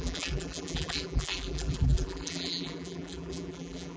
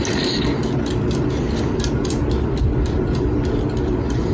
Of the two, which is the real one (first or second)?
second